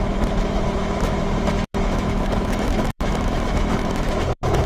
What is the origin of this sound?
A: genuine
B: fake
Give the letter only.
B